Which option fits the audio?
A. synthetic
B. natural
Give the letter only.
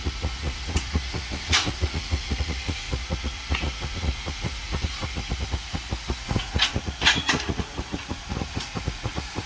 A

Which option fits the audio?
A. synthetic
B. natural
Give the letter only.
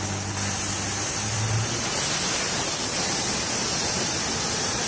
B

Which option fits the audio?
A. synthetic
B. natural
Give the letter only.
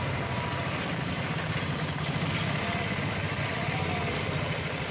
B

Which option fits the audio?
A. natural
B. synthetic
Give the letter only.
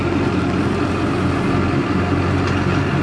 A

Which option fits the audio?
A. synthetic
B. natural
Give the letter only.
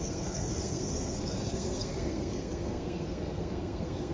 A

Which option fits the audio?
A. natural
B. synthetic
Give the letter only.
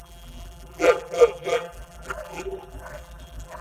B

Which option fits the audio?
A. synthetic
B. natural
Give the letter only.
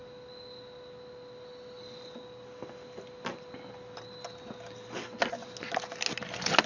B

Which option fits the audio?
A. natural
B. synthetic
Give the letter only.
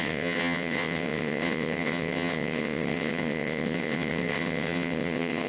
B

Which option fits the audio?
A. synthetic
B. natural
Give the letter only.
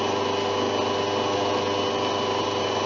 B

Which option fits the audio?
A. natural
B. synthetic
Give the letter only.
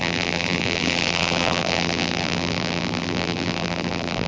B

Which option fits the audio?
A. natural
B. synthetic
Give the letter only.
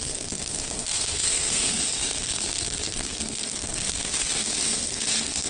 B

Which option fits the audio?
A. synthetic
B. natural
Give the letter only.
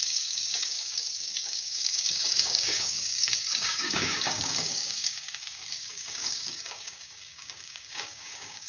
A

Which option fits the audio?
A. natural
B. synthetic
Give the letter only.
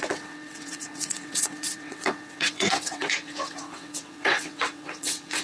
B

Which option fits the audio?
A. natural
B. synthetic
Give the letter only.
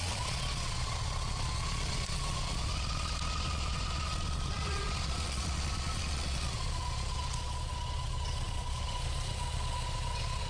B